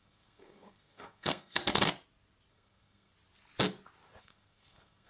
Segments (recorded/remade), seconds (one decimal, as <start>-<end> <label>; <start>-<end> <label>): 0.0-1.6 remade; 1.6-2.5 recorded; 2.5-3.1 remade; 3.1-4.2 recorded; 4.2-5.1 remade